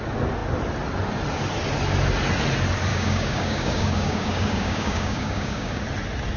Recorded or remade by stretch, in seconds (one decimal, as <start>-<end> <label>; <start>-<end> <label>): 0.0-2.9 recorded; 2.9-5.8 remade; 5.8-6.4 recorded

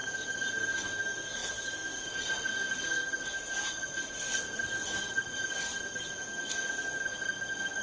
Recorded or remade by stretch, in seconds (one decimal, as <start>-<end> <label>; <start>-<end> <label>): 0.0-0.5 recorded; 0.5-7.8 remade

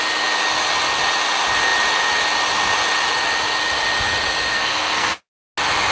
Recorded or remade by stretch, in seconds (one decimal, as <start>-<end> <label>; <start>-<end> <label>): 0.0-4.5 recorded; 4.5-5.2 remade; 5.2-5.9 recorded